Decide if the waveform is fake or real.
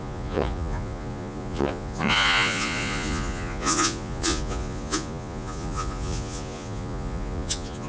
fake